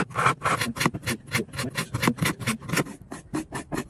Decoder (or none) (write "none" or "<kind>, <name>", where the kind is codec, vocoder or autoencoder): none